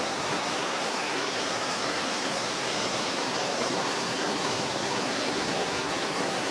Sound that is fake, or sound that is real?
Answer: fake